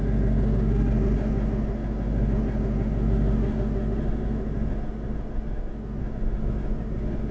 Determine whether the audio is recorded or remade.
remade